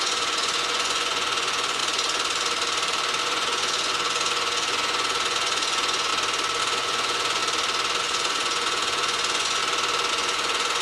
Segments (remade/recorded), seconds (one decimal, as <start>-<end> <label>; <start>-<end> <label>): 0.0-1.8 remade; 1.8-3.2 recorded; 3.2-6.1 remade; 6.1-6.6 recorded; 6.6-7.4 remade; 7.4-8.0 recorded; 8.0-9.6 remade; 9.6-10.1 recorded; 10.1-10.8 remade